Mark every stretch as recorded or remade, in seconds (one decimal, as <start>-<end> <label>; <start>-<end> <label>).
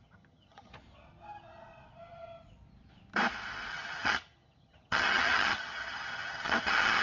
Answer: 0.0-0.7 remade; 0.7-3.7 recorded; 3.7-7.0 remade